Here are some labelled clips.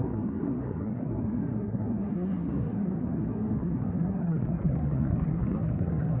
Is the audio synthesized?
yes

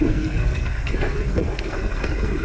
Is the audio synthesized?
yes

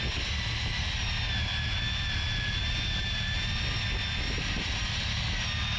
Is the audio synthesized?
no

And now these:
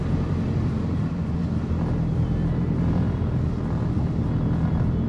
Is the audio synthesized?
yes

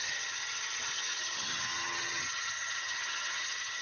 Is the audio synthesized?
yes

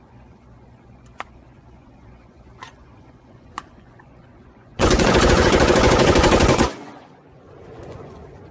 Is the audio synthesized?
yes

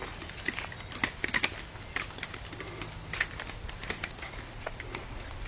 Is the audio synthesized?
no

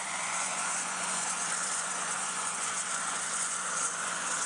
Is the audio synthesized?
yes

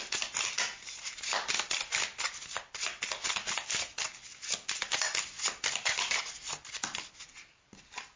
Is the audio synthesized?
no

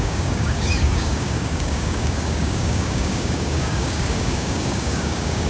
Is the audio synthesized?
yes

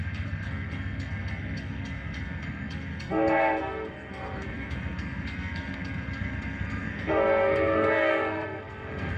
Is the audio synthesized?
yes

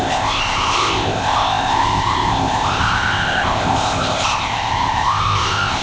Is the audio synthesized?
yes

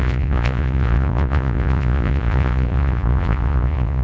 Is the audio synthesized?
yes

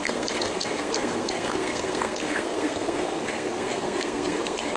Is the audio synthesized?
yes